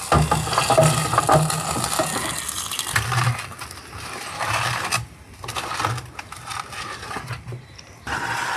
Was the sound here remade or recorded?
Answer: recorded